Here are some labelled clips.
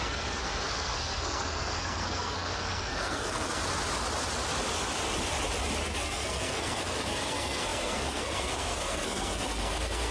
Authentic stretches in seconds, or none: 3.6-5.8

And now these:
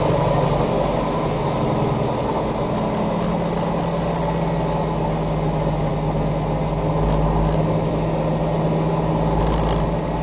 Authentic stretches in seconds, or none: 0.0-10.2

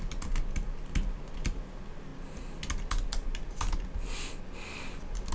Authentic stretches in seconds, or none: 0.0-5.3

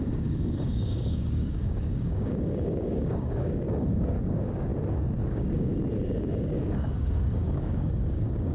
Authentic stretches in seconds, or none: 4.7-5.3; 5.7-6.2

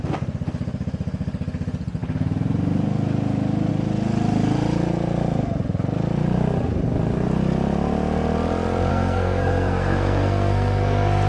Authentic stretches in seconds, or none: 0.0-8.9

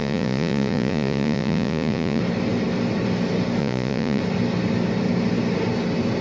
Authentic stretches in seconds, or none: 2.2-3.6; 4.2-6.2

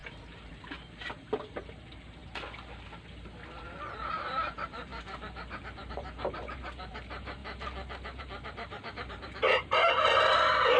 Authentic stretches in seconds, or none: 2.2-3.6; 7.4-8.2

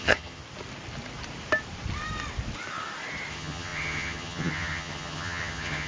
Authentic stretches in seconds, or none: 0.4-3.3